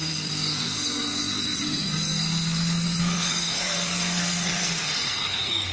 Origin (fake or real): fake